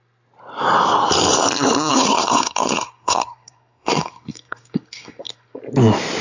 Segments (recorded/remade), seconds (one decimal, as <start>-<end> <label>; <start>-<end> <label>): 0.0-1.9 recorded; 1.9-5.6 remade; 5.6-6.2 recorded